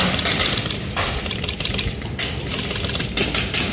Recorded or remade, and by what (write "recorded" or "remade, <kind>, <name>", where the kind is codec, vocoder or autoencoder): recorded